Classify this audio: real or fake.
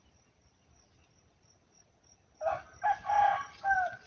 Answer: real